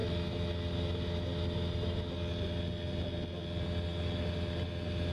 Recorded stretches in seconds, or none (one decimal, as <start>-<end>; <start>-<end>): 0.0-5.1